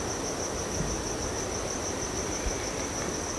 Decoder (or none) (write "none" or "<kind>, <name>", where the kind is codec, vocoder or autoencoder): none